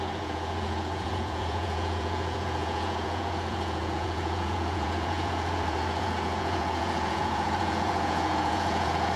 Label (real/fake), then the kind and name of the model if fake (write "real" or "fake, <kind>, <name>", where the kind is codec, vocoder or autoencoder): fake, vocoder, Vocos